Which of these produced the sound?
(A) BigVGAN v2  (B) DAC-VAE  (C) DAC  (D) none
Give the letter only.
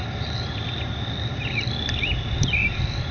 D